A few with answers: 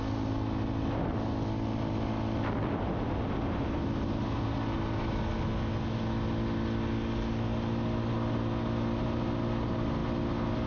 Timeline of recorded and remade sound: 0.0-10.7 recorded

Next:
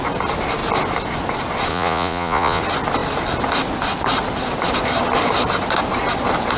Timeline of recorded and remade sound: 0.0-1.7 recorded; 1.7-2.6 remade; 2.6-6.6 recorded

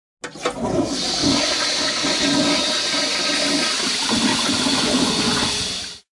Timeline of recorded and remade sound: 0.0-1.2 recorded; 1.2-2.4 remade; 2.4-4.3 recorded; 4.3-5.5 remade; 5.5-6.2 recorded

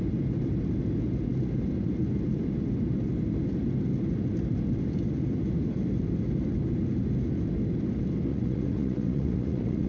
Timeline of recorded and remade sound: 0.0-8.3 recorded; 8.3-9.9 remade